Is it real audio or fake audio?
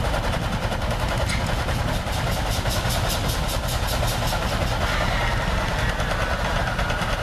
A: real